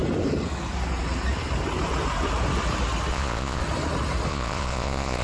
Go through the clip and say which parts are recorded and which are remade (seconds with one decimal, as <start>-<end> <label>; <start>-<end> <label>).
0.0-3.1 recorded; 3.1-3.6 remade; 3.6-4.3 recorded; 4.3-5.2 remade